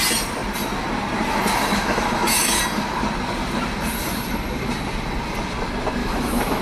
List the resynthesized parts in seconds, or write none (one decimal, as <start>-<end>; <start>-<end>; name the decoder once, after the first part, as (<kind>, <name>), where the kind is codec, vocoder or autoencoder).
1.7-2.6 (autoencoder, DAC-VAE); 6.0-6.6